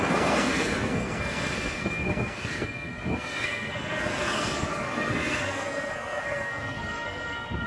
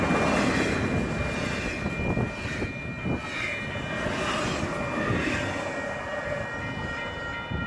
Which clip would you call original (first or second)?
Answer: second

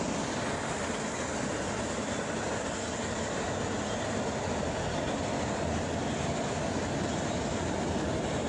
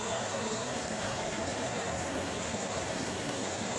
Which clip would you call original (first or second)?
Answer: first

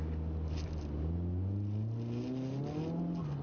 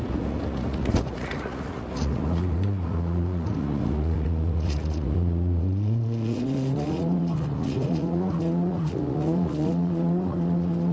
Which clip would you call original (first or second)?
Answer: first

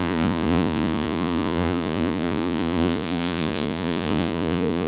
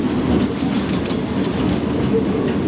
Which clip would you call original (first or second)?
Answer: second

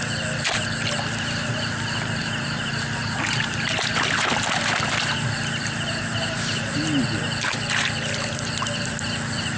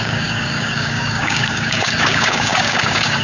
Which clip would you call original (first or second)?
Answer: first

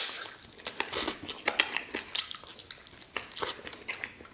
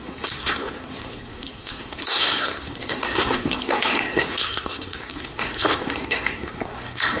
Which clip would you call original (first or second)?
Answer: first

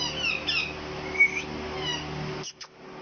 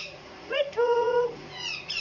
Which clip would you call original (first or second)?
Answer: first